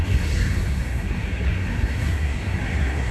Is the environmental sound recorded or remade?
remade